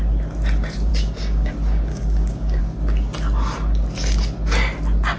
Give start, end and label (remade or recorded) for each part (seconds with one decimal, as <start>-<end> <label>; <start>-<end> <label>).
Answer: 0.0-0.9 recorded; 0.9-1.5 remade; 1.5-1.9 recorded; 1.9-2.6 remade; 2.6-5.2 recorded